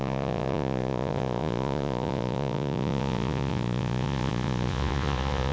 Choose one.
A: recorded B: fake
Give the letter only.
B